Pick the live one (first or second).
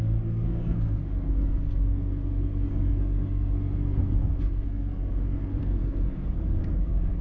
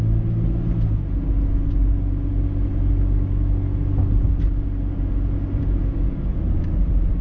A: second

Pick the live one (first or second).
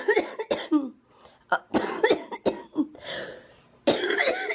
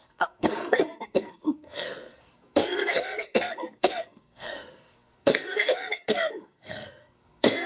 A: first